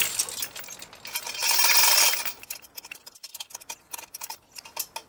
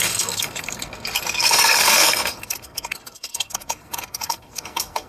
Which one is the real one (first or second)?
first